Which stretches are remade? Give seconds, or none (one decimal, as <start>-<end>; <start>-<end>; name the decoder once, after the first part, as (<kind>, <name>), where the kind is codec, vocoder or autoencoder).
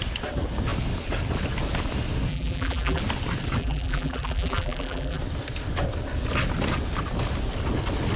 2.3-3.0 (vocoder, BigVGAN v2); 3.6-5.2